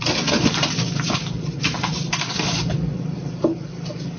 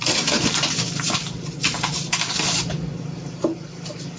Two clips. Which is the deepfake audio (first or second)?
first